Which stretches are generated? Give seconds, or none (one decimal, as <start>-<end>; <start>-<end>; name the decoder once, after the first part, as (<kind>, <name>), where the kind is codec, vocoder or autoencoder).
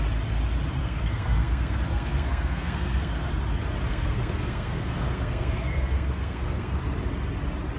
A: 0.8-3.3 (codec, SNAC); 3.9-6.8